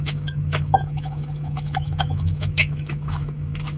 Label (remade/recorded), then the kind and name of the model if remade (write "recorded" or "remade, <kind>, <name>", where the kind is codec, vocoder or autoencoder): remade, autoencoder, DAC-VAE